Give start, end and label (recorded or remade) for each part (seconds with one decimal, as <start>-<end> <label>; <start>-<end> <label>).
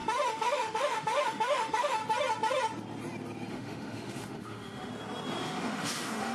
0.0-2.0 remade; 2.0-3.5 recorded; 3.5-4.9 remade; 4.9-5.4 recorded; 5.4-6.3 remade